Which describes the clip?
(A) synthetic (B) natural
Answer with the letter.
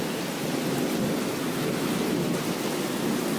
B